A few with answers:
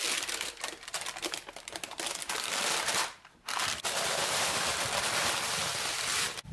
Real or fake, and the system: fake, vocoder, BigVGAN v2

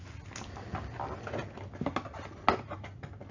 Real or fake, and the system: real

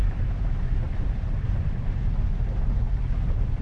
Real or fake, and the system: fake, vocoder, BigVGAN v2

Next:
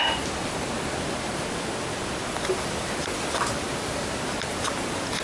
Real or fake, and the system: real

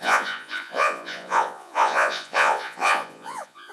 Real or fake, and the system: fake, vocoder, Vocos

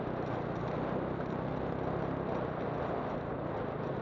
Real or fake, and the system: real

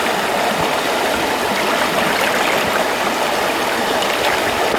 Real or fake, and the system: real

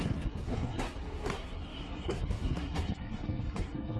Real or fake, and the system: fake, codec, SNAC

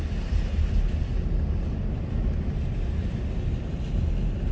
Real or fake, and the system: real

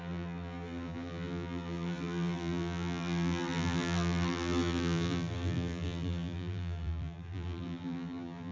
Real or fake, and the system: fake, vocoder, BigVGAN v2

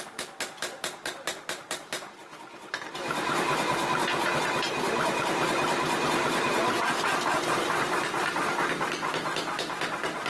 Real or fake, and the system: real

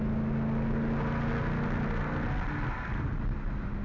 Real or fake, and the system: real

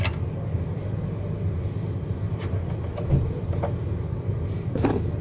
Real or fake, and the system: real